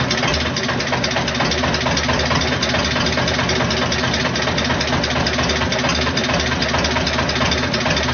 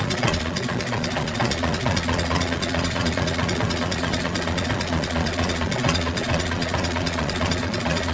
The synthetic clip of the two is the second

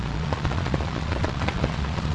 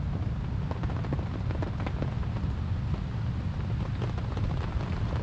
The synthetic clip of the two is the first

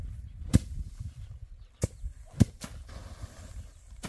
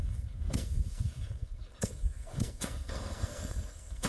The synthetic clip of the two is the second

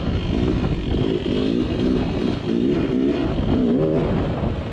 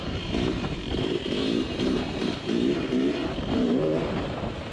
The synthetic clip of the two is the second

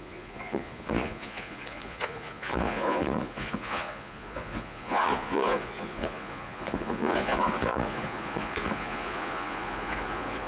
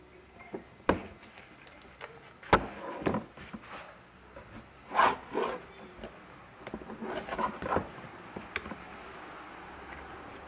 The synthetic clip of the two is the first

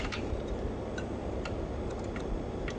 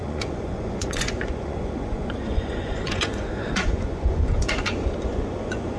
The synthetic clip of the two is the second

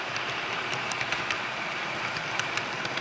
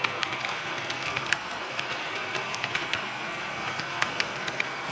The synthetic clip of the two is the second